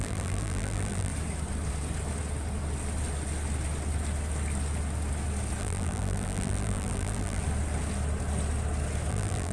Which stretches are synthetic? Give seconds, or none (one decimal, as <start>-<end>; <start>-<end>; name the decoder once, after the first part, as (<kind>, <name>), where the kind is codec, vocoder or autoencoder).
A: 0.0-1.1 (vocoder, BigVGAN v2); 5.6-7.4; 9.1-9.5